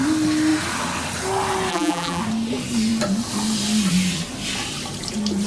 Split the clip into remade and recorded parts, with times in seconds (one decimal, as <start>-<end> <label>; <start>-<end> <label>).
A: 0.0-1.7 recorded; 1.7-2.2 remade; 2.2-5.5 recorded